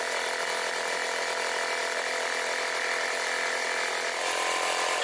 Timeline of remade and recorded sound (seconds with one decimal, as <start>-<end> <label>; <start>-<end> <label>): 0.0-5.0 recorded